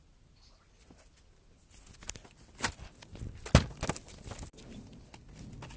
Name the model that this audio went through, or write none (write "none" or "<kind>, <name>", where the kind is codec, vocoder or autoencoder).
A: none